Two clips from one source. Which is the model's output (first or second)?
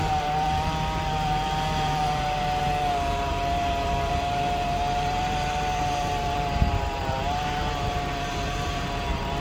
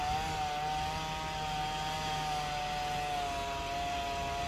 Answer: first